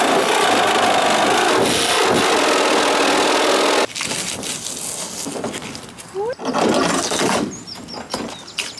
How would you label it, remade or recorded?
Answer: recorded